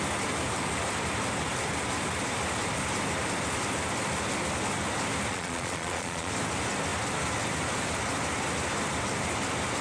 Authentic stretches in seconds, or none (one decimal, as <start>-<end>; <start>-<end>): 0.0-5.3; 6.3-9.8